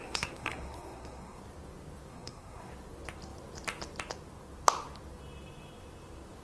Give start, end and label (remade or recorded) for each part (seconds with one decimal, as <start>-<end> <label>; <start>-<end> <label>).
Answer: 0.0-1.4 remade; 1.4-2.1 recorded; 2.1-2.7 remade; 2.7-6.4 recorded